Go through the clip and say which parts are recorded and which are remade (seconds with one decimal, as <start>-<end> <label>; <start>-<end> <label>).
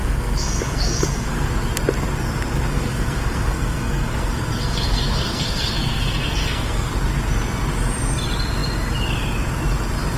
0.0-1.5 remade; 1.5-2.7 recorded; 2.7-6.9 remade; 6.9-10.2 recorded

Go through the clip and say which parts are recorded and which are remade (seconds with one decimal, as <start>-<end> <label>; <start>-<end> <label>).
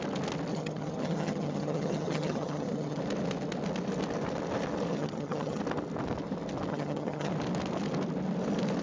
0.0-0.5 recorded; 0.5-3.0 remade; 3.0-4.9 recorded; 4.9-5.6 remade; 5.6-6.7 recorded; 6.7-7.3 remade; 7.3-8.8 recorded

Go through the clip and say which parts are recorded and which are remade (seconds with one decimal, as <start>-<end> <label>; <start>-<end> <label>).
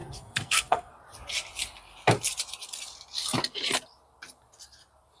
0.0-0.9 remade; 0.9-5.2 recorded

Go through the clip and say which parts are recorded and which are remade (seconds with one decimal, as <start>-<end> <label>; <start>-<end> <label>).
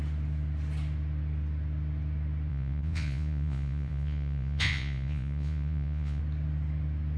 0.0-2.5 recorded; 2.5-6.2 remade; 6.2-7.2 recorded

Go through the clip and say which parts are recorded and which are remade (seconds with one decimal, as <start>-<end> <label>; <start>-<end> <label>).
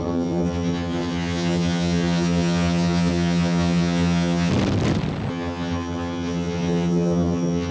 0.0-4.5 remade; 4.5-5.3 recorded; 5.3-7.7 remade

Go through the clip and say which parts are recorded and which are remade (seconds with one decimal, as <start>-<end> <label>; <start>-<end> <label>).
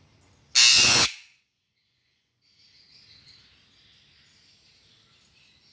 0.0-0.7 recorded; 0.7-2.4 remade; 2.4-5.7 recorded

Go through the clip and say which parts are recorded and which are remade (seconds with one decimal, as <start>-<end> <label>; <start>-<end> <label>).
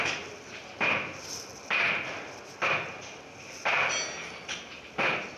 0.0-5.4 recorded